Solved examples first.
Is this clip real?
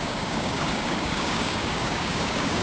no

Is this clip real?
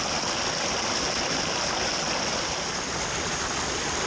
yes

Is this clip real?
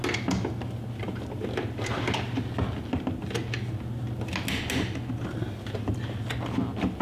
yes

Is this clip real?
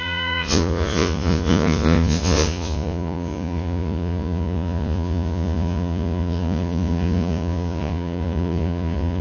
no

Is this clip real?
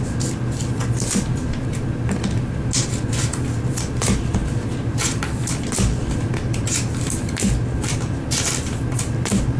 yes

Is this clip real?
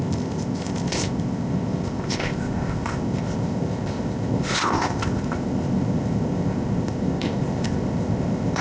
no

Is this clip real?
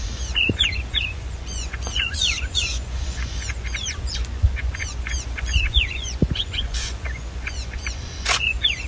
no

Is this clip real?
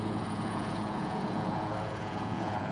no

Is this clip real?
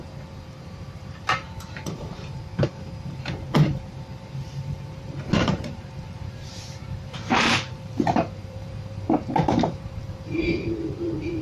no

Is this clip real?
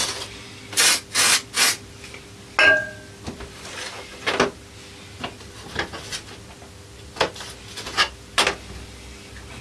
yes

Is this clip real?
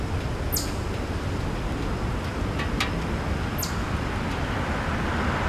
yes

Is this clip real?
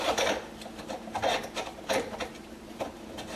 no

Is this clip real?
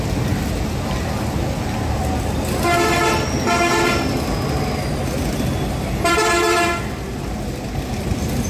yes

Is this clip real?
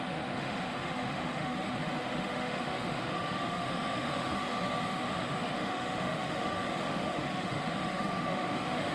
no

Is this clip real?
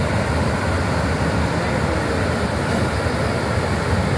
yes